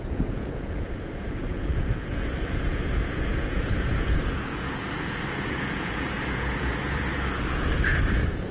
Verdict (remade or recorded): remade